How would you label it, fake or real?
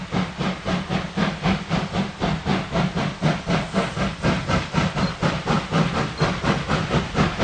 real